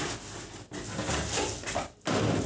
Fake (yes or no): no